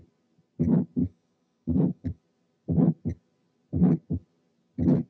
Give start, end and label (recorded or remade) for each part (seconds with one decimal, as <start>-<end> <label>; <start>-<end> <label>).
0.0-1.0 recorded; 1.0-2.2 remade; 2.2-5.1 recorded